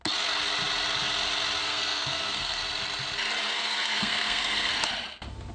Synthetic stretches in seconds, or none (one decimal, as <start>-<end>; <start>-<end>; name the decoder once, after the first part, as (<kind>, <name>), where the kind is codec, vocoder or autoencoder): 1.6-2.6 (codec, SNAC); 3.5-4.7